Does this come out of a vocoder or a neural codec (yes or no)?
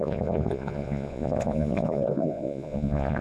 yes